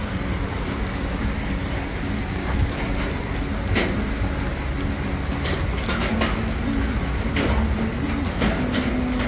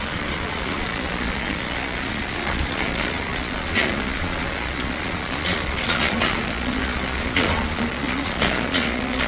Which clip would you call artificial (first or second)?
second